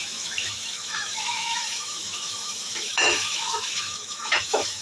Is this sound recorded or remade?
remade